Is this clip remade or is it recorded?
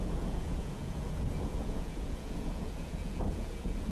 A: remade